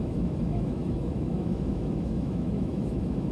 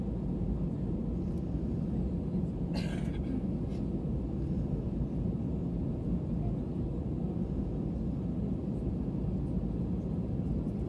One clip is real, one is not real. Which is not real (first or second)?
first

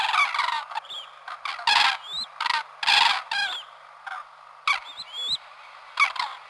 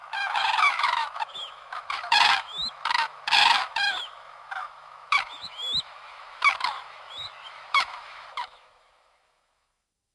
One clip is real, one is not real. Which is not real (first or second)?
second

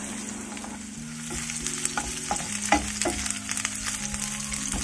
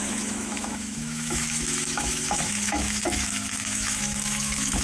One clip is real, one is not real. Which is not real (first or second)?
second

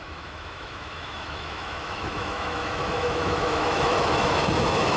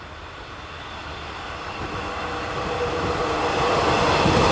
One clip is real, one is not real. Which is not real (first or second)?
first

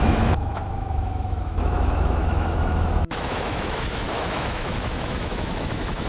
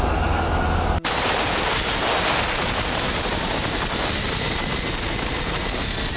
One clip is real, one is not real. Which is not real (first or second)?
first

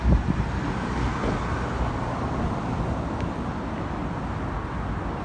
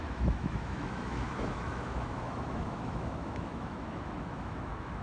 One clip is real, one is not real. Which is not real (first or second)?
second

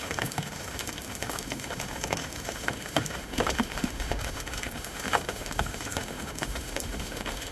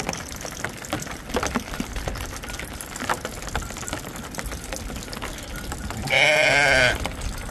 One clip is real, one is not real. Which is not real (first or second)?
first